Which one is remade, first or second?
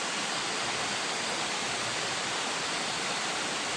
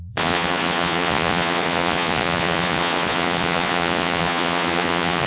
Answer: second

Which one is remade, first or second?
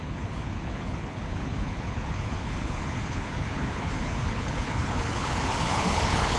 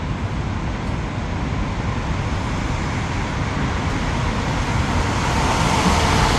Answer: first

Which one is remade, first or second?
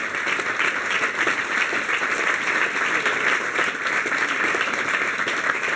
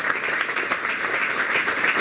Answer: second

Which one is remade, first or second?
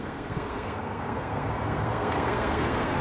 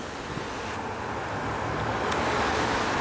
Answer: first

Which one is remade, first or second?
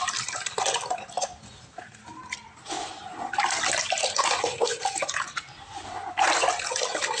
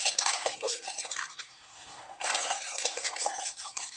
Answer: second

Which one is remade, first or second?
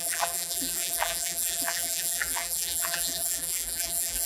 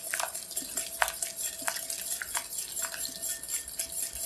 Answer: first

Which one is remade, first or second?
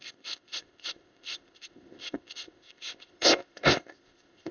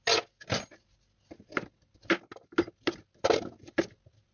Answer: first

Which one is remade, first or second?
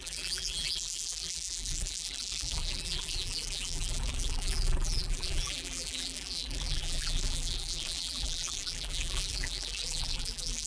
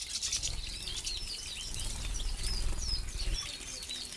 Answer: first